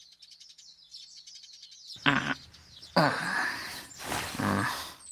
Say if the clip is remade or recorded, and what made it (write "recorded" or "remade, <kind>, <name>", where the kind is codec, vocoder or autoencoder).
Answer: recorded